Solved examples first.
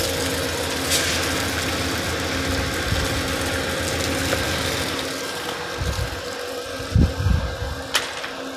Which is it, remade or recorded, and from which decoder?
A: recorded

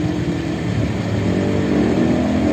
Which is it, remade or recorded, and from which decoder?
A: recorded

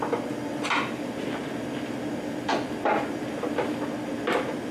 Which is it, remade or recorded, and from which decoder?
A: recorded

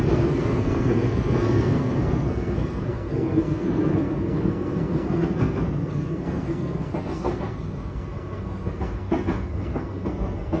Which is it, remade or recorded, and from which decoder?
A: remade, codec, SNAC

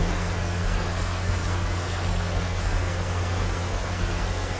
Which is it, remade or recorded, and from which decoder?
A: remade, codec, SNAC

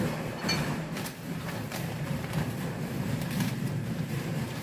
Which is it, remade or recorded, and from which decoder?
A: remade, vocoder, BigVGAN v2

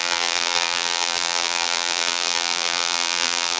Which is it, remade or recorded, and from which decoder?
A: remade, vocoder, BigVGAN v2